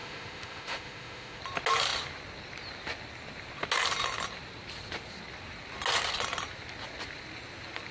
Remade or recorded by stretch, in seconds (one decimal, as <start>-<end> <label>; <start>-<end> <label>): 0.0-1.4 remade; 1.4-7.9 recorded